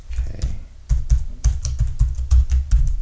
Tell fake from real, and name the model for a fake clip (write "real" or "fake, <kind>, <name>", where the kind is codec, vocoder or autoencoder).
real